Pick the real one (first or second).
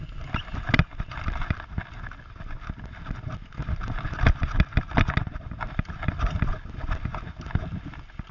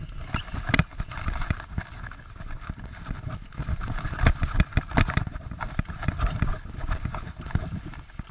first